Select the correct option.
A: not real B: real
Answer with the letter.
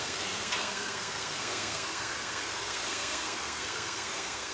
A